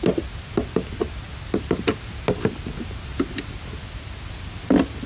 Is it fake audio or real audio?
real